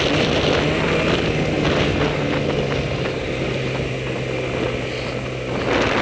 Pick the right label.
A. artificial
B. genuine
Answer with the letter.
B